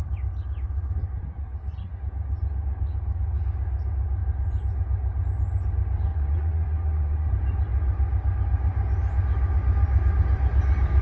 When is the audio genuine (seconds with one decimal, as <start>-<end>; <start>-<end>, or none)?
0.0-6.1; 7.3-11.0